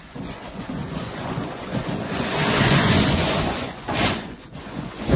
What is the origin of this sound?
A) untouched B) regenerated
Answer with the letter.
B